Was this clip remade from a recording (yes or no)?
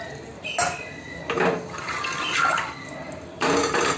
no